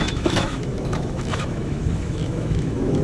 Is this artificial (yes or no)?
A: yes